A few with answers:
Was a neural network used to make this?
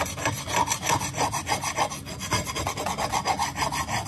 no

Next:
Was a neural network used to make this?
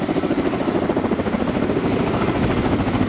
no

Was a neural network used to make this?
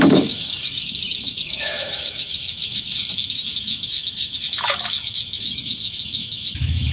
yes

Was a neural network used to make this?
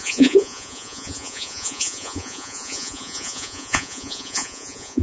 yes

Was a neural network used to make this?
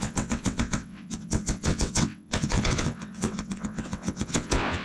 yes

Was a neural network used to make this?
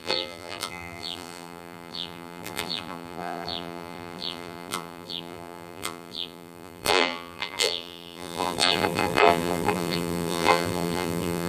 yes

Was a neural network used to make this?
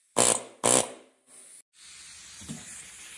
no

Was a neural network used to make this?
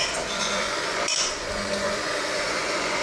yes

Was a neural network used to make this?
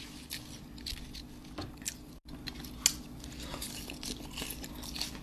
no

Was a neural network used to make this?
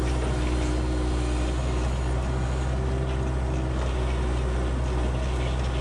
no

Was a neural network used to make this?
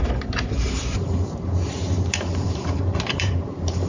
yes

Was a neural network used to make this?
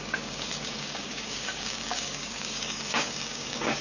yes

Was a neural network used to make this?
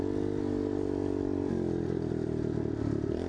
no